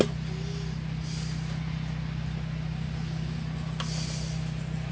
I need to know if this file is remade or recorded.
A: recorded